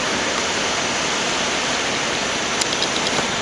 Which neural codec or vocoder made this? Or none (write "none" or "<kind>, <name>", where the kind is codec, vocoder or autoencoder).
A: none